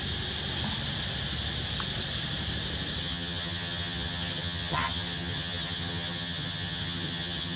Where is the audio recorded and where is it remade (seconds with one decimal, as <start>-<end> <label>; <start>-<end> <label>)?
0.0-3.0 recorded; 3.0-7.6 remade